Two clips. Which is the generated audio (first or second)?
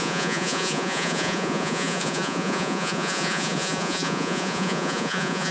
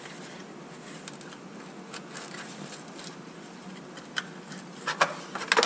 first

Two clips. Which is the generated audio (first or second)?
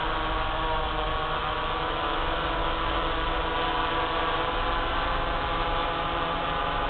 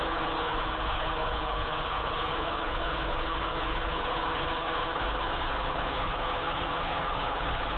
second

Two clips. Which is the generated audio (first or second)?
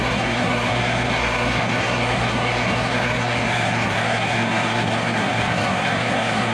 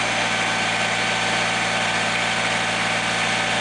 first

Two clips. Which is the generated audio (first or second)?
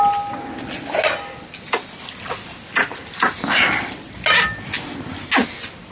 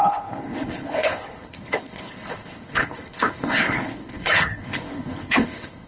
second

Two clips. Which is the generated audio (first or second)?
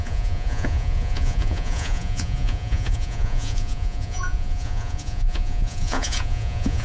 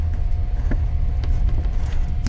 first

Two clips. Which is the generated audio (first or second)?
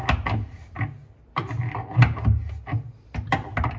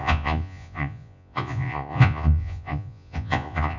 second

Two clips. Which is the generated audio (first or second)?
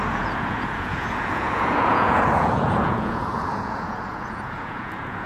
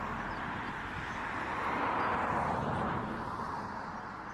first